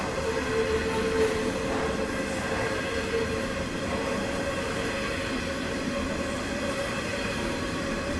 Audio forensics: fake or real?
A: real